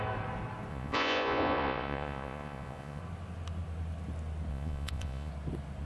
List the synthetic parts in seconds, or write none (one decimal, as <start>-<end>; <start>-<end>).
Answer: 0.7-3.0; 4.5-5.3